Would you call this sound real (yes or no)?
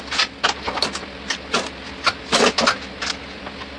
yes